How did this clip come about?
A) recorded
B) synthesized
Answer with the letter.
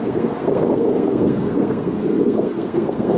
B